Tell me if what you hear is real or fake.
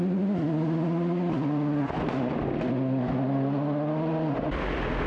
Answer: real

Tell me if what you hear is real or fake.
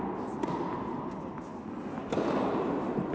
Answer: real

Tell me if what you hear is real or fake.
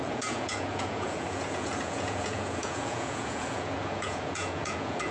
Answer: fake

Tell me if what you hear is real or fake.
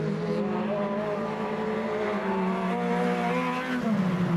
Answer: real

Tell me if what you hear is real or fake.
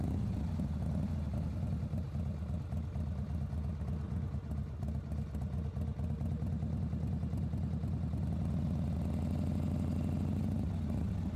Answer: real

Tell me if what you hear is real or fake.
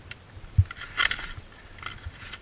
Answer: real